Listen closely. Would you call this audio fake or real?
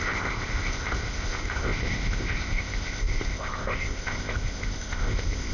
fake